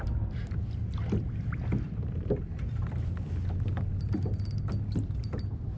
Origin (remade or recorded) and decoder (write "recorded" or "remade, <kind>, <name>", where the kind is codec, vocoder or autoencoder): recorded